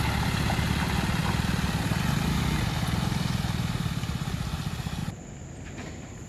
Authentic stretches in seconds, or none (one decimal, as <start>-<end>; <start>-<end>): 0.0-6.3